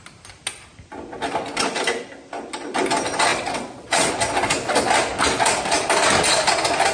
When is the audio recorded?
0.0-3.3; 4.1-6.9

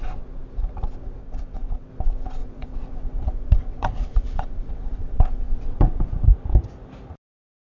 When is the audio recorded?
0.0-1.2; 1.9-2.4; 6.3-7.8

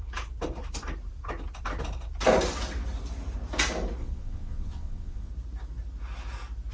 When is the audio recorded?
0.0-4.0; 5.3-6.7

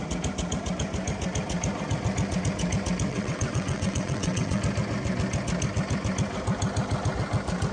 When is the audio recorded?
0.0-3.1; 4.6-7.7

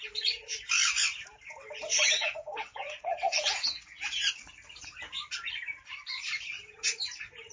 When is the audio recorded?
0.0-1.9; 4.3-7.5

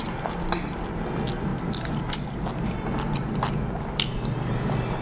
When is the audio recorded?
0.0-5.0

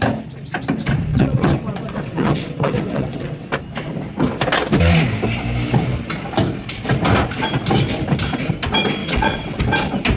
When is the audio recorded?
0.0-1.1; 3.5-9.0; 9.6-10.2